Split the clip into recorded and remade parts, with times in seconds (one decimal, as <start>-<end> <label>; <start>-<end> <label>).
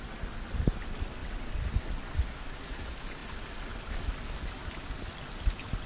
0.0-5.9 recorded